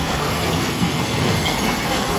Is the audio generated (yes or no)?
yes